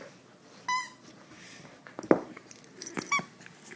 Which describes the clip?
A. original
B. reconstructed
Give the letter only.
A